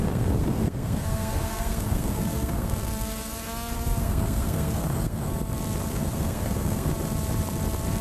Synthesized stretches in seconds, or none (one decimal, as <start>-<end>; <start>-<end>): 0.0-5.3; 5.9-6.9